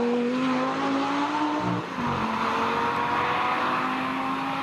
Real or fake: real